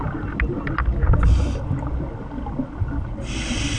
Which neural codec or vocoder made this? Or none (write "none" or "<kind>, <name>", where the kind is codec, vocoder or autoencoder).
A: none